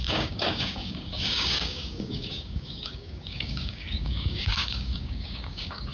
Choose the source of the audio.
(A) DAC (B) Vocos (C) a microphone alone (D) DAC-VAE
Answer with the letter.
A